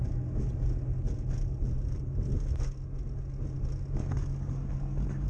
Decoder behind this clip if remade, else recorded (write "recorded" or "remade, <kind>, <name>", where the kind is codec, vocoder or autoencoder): recorded